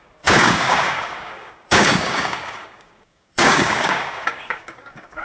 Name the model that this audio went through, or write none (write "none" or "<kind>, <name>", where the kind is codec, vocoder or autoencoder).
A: codec, DAC